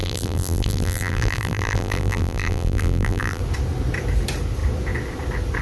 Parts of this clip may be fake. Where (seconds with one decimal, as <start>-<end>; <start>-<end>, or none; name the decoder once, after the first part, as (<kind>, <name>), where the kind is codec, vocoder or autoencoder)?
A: 0.0-3.4 (vocoder, BigVGAN v2)